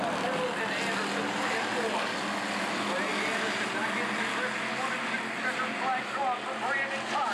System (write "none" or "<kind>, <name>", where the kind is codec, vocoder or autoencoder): none